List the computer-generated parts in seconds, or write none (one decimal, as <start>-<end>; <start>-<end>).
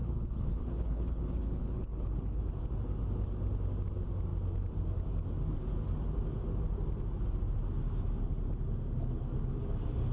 0.0-2.4